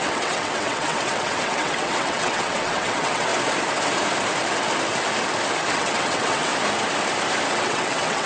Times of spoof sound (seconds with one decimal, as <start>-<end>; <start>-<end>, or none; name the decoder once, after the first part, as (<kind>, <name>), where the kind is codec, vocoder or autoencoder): 0.0-3.3 (vocoder, WaveNeXt); 5.6-6.5; 7.5-8.3